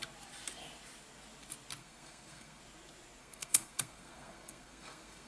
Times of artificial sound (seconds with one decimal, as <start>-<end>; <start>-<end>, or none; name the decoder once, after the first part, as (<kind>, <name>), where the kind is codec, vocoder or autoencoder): 1.8-2.6 (codec, SNAC); 3.2-5.3